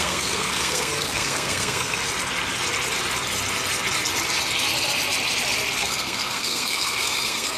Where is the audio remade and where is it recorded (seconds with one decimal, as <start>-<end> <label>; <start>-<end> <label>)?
0.0-2.0 remade; 2.0-5.8 recorded; 5.8-7.6 remade